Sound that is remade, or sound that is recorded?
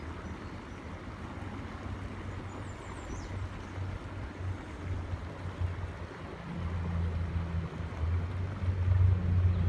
recorded